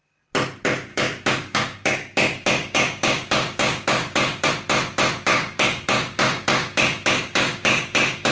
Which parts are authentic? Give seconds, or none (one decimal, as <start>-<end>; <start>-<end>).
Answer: 0.0-0.9; 4.5-5.3